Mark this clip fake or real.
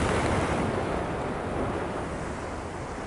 real